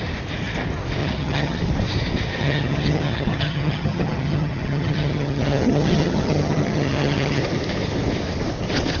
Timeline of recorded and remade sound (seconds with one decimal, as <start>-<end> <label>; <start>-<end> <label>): 0.0-1.0 recorded; 1.0-1.6 remade; 1.6-2.4 recorded; 2.4-7.4 remade; 7.4-9.0 recorded